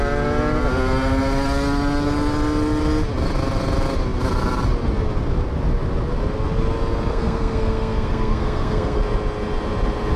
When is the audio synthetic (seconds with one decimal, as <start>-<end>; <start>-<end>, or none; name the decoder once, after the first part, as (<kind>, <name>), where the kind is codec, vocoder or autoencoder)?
7.1-9.0 (codec, SNAC)